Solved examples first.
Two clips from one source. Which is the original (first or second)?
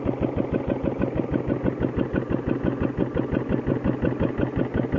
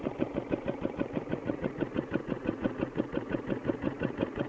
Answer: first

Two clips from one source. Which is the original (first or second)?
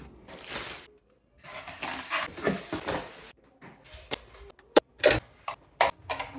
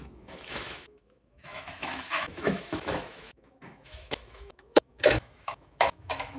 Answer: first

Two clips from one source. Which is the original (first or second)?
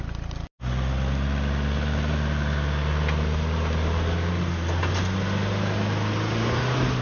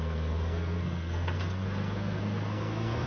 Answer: first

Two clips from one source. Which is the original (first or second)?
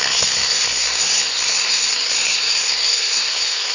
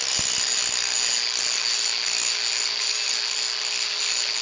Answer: second